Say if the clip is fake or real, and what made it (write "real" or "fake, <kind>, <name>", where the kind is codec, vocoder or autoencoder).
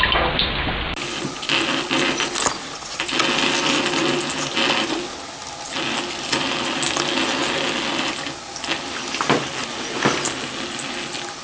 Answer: real